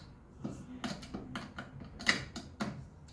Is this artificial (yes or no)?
no